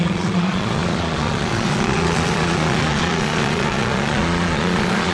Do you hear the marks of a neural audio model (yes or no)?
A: yes